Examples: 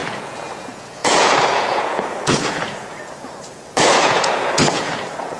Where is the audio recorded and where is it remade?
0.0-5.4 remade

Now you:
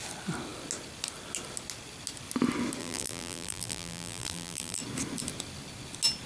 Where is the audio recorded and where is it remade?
0.0-2.8 recorded; 2.8-4.8 remade; 4.8-6.3 recorded

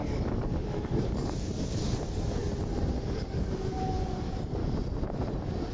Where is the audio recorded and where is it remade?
0.0-2.4 remade; 2.4-3.1 recorded; 3.1-4.6 remade; 4.6-5.7 recorded

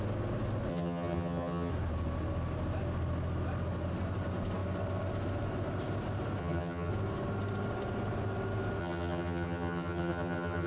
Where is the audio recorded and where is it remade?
0.0-0.7 recorded; 0.7-1.7 remade; 1.7-6.4 recorded; 6.4-6.9 remade; 6.9-8.8 recorded; 8.8-10.7 remade

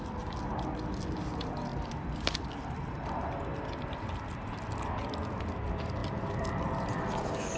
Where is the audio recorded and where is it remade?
0.0-1.7 recorded; 1.7-2.5 remade; 2.5-6.0 recorded; 6.0-6.9 remade; 6.9-7.6 recorded

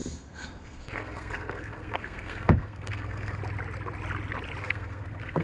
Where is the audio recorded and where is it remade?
0.0-3.4 remade; 3.4-4.6 recorded; 4.6-5.4 remade

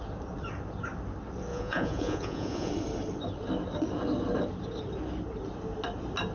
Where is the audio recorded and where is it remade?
0.0-1.5 recorded; 1.5-2.7 remade; 2.7-6.3 recorded